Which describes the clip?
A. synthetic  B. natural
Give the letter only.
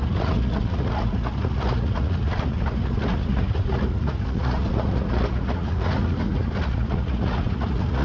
A